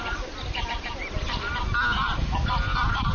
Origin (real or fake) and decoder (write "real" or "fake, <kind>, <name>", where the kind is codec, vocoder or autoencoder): real